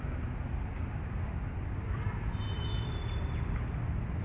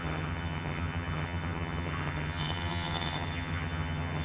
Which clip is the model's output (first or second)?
second